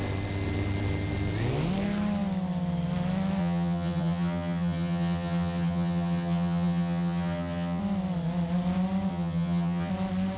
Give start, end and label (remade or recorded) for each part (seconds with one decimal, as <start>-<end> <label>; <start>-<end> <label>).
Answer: 0.0-3.4 recorded; 3.4-7.8 remade; 7.8-9.1 recorded; 9.1-9.9 remade; 9.9-10.4 recorded